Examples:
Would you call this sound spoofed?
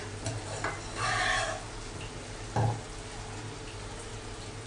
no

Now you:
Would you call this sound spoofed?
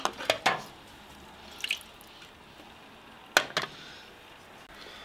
no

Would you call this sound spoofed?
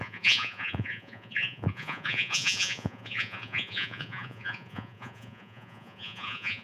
yes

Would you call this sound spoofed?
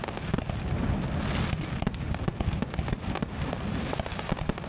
no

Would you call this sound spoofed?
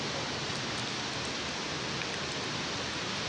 no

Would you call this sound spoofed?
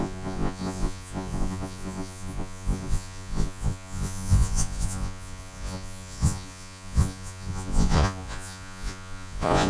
yes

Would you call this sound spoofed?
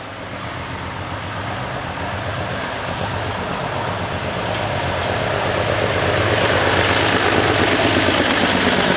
no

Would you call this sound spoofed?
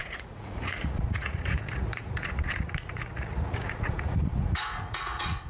yes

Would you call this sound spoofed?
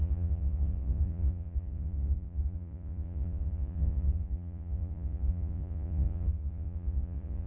yes